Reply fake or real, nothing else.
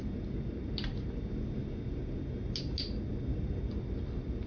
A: real